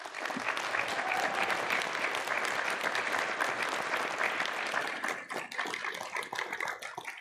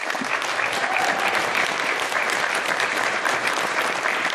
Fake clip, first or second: second